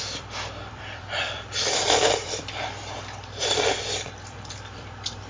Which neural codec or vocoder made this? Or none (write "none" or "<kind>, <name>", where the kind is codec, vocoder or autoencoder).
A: vocoder, BigVGAN v2